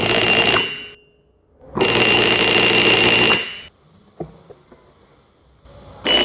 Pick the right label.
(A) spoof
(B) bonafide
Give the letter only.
B